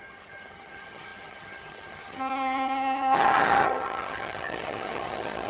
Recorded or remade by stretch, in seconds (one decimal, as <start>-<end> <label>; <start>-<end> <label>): 0.0-5.5 remade